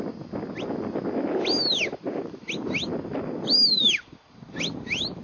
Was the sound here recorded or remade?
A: recorded